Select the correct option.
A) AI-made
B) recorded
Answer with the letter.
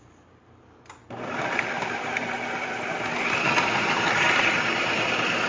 B